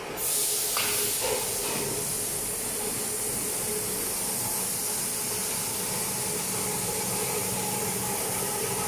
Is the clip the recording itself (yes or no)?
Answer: yes